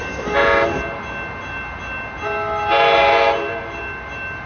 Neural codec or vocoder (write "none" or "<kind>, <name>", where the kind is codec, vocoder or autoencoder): none